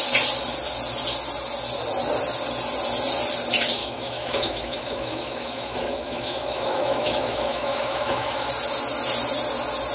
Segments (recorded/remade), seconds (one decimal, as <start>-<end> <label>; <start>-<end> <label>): 0.0-3.8 recorded; 3.8-8.5 remade; 8.5-9.9 recorded